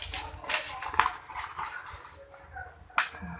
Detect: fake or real real